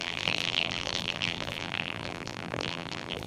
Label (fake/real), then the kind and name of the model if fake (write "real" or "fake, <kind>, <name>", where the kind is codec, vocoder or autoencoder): fake, vocoder, BigVGAN v2